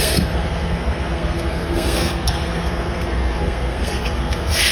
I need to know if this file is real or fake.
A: fake